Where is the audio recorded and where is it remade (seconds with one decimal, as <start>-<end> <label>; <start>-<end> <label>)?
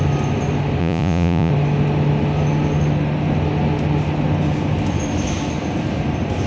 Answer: 0.0-0.8 recorded; 0.8-1.5 remade; 1.5-6.5 recorded